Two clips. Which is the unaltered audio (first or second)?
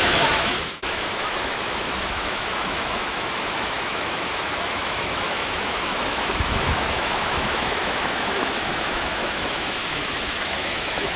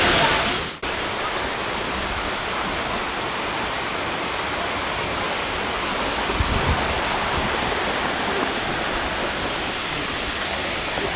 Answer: second